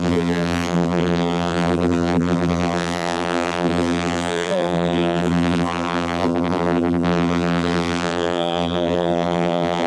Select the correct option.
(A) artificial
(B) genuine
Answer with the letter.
A